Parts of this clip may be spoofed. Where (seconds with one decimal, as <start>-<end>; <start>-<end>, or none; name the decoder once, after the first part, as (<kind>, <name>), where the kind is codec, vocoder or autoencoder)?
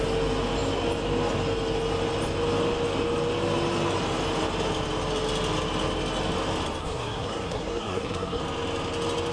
6.8-8.4 (codec, SNAC)